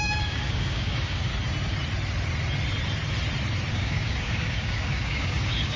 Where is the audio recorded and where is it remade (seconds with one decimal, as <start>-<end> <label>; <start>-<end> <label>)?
0.0-1.3 remade; 1.3-3.7 recorded; 3.7-5.8 remade